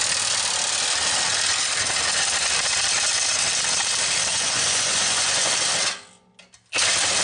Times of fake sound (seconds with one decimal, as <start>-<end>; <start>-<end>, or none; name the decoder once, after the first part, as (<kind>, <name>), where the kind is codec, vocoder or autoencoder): 4.3-5.5 (vocoder, Vocos)